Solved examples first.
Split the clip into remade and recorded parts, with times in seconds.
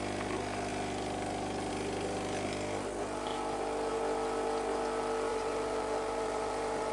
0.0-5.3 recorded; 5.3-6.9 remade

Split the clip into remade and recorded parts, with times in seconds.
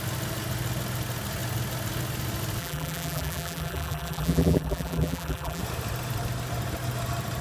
0.0-2.6 recorded; 2.6-5.6 remade; 5.6-7.4 recorded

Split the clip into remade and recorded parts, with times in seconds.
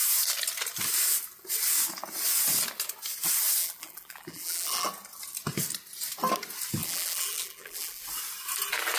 0.0-3.6 recorded; 3.6-4.9 remade; 4.9-6.8 recorded; 6.8-8.0 remade; 8.0-9.0 recorded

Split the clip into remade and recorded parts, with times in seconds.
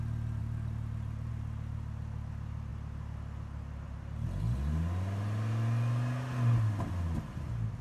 0.0-0.4 recorded; 0.4-1.3 remade; 1.3-7.8 recorded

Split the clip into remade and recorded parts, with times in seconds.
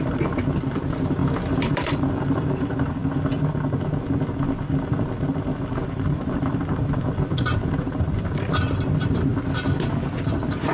0.0-3.0 remade; 3.0-5.7 recorded; 5.7-9.3 remade; 9.3-10.7 recorded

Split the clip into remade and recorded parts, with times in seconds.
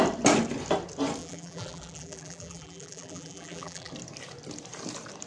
0.0-1.2 recorded; 1.2-3.9 remade; 3.9-5.3 recorded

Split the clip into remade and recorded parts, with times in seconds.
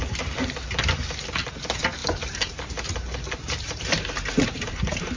0.0-2.0 recorded; 2.0-5.2 remade